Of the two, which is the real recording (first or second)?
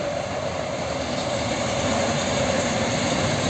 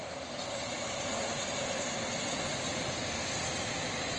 second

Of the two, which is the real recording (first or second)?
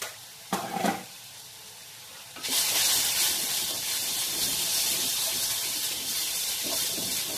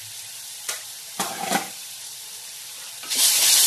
first